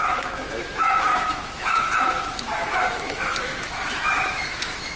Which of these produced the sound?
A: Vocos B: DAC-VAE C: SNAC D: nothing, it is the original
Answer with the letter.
B